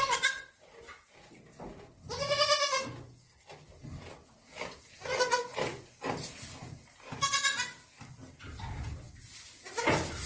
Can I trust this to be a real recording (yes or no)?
yes